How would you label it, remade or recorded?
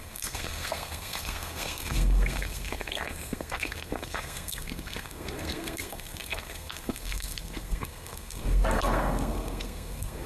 remade